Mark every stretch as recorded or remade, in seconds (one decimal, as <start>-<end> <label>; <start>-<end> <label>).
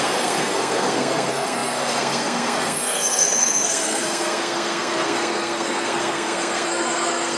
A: 0.0-7.4 remade